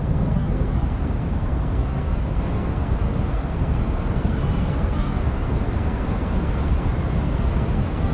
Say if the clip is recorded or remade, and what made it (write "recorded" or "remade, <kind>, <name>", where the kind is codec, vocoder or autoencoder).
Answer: remade, codec, SNAC